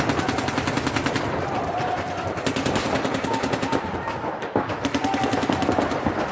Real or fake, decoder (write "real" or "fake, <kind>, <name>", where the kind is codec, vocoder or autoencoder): real